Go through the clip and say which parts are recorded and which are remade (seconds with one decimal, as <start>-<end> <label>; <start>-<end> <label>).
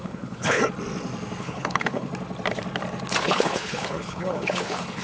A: 0.0-0.6 remade; 0.6-1.4 recorded; 1.4-2.1 remade; 2.1-3.2 recorded; 3.2-5.0 remade